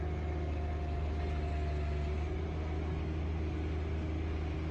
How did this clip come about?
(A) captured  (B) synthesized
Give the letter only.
A